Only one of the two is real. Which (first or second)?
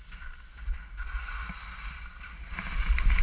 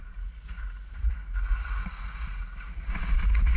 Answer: first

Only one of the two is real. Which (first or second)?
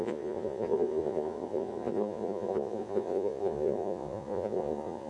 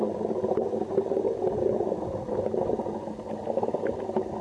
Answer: second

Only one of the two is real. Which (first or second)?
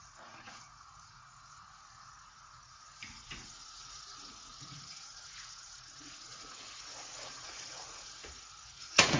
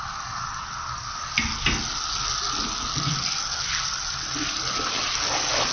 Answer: second